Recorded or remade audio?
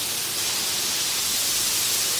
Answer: recorded